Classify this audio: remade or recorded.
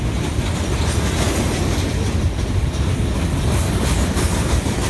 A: recorded